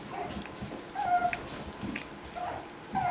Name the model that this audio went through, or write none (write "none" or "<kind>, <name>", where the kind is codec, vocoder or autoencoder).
none